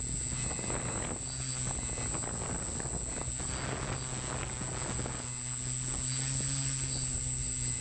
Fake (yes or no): no